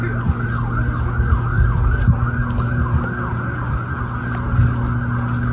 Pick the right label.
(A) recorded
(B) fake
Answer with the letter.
A